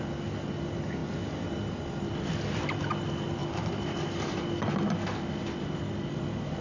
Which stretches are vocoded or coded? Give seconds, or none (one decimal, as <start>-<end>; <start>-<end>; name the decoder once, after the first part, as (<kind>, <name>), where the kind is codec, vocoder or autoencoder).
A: none